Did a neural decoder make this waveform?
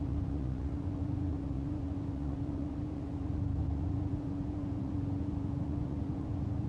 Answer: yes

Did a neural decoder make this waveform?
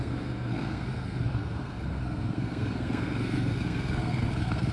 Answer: yes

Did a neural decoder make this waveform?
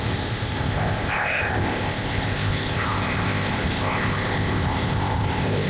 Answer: yes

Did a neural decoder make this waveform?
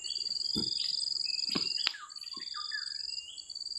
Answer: no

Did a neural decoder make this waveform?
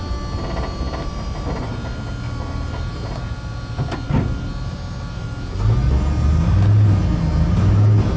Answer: no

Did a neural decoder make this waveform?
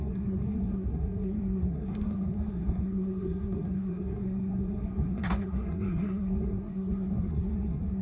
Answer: yes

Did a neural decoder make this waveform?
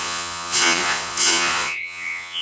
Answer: yes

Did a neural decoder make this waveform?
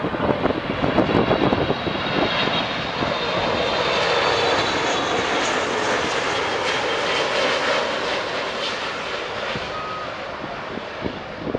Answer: no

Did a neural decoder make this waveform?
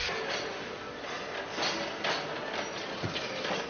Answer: no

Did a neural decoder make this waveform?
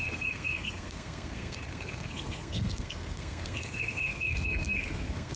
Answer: yes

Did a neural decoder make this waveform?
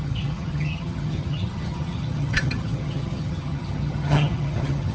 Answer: yes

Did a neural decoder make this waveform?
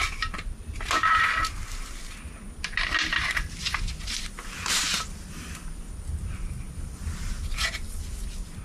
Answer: no